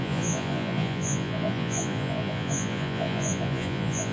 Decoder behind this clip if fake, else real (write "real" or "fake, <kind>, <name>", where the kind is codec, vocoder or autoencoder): fake, vocoder, Vocos